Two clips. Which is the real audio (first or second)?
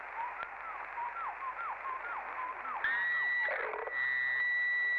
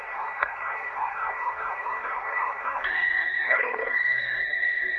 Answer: first